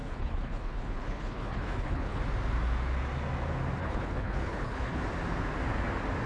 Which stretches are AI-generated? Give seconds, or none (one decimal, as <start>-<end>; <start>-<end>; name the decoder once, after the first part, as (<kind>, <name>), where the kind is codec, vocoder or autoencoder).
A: 0.0-2.2 (codec, HILCodec); 3.8-5.0